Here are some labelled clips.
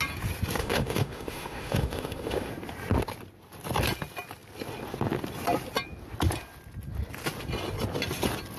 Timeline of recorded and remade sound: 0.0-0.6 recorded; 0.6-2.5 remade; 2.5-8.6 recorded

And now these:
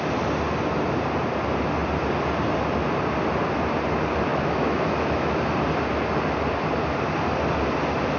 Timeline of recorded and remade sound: 0.0-4.3 recorded; 4.3-5.4 remade; 5.4-8.2 recorded

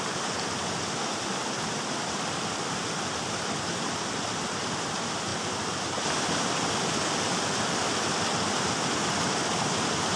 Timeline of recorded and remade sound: 0.0-10.2 recorded

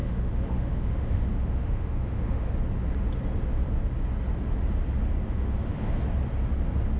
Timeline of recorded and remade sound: 0.0-2.5 remade; 2.5-5.2 recorded; 5.2-5.9 remade; 5.9-7.0 recorded

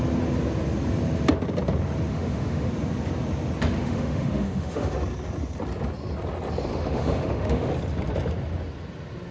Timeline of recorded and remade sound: 0.0-2.1 recorded; 2.1-2.7 remade; 2.7-3.8 recorded; 3.8-5.0 remade; 5.0-6.7 recorded; 6.7-7.7 remade; 7.7-9.3 recorded

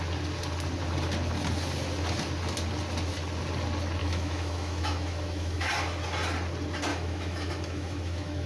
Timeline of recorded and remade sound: 0.0-4.0 recorded; 4.0-5.7 remade; 5.7-6.9 recorded; 6.9-8.5 remade

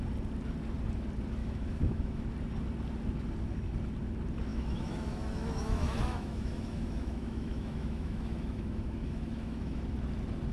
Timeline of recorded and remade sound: 0.0-1.4 recorded; 1.4-2.2 remade; 2.2-4.5 recorded; 4.5-9.8 remade; 9.8-10.5 recorded

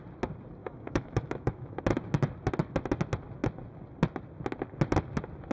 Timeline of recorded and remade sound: 0.0-0.6 recorded; 0.6-1.8 remade; 1.8-5.5 recorded